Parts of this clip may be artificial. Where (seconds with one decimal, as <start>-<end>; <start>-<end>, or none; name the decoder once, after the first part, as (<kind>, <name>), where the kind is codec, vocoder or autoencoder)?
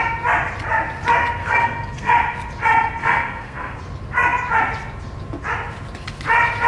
1.4-2.1 (codec, SNAC); 3.0-3.8